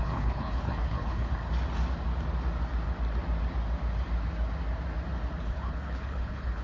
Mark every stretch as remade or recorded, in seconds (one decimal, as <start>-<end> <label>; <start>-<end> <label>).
0.0-1.4 remade; 1.4-5.4 recorded; 5.4-6.6 remade